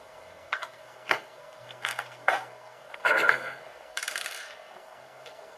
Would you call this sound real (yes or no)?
no